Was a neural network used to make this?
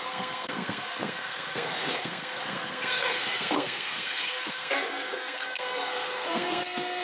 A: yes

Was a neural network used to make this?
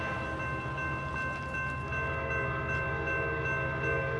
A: no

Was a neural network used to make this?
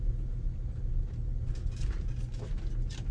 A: no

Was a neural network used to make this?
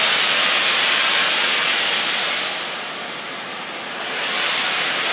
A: no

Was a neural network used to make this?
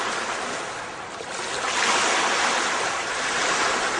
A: no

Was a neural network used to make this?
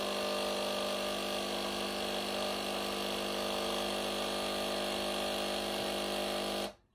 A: no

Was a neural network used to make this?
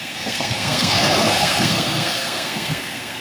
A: yes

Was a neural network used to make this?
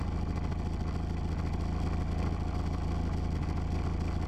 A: no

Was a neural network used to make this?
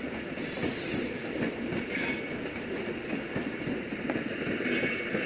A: no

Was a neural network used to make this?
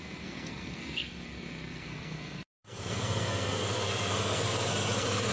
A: yes